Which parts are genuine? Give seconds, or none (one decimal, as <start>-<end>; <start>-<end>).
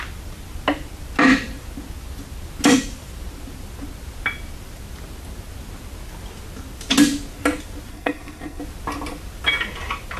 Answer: 0.0-7.9; 8.6-10.2